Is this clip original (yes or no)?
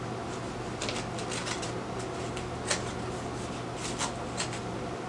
yes